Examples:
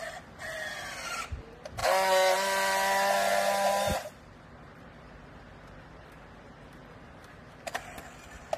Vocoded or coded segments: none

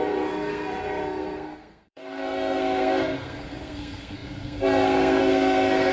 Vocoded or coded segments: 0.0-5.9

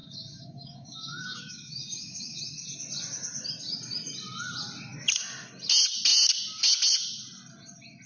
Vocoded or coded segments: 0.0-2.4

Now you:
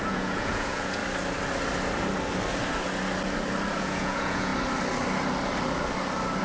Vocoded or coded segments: 0.0-1.0; 3.8-4.5

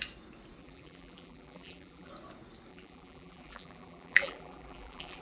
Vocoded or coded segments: 0.6-2.1; 2.7-5.2